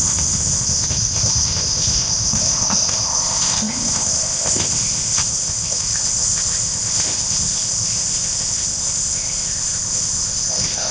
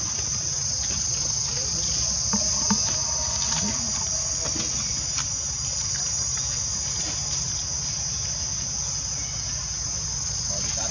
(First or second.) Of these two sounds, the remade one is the first